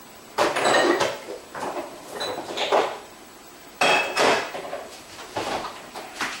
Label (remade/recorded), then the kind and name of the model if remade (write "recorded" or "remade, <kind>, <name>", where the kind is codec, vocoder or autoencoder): remade, vocoder, BigVGAN v2